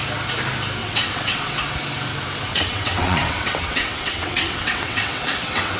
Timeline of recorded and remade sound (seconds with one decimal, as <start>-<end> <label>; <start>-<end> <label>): 0.0-0.8 recorded; 0.8-1.6 remade; 1.6-2.5 recorded; 2.5-5.8 remade

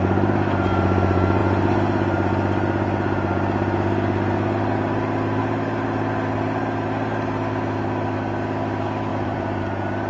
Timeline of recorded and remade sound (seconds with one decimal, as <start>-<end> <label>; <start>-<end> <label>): 0.0-9.1 recorded; 9.1-9.6 remade; 9.6-10.1 recorded